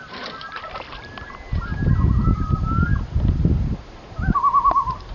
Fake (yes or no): no